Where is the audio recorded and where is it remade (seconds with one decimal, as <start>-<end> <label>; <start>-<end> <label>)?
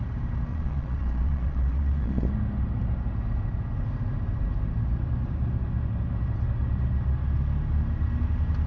0.0-0.5 recorded; 0.5-2.3 remade; 2.3-8.7 recorded